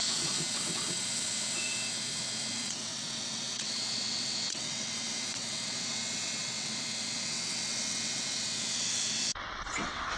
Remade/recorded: remade